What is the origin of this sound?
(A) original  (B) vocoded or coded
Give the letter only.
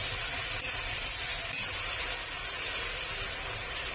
A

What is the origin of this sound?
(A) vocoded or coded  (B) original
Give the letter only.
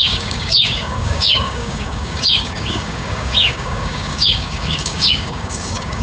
A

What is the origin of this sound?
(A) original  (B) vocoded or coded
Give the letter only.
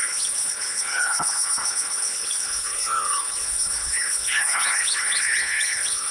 B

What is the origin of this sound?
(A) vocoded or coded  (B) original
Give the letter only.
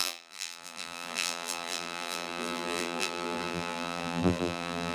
A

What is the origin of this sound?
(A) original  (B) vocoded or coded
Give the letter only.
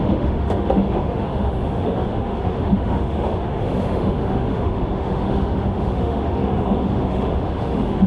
B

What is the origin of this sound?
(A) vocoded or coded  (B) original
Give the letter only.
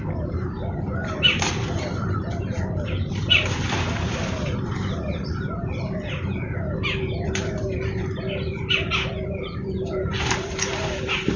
A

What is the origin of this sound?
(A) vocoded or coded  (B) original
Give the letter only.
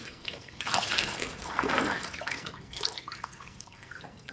A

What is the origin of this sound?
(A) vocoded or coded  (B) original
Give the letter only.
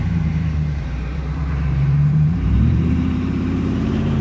A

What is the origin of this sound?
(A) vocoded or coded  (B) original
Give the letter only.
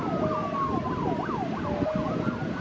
B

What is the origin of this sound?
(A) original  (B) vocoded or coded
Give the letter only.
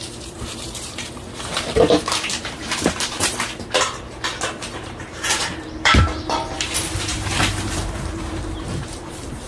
B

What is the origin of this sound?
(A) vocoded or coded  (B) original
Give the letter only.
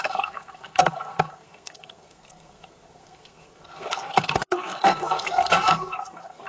A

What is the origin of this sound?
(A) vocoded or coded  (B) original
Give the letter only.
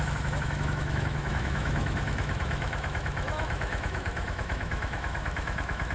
A